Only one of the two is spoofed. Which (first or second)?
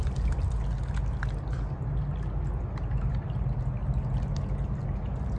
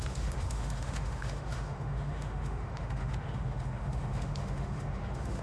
second